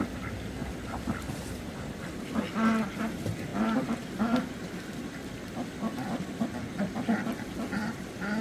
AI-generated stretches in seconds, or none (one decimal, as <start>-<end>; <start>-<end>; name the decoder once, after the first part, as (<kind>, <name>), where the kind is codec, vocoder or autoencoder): none